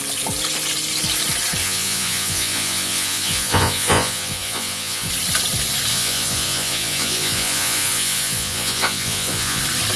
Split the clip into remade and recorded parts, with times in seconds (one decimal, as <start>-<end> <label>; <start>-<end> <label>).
0.0-1.6 recorded; 1.6-5.1 remade; 5.1-5.9 recorded; 5.9-9.6 remade; 9.6-10.0 recorded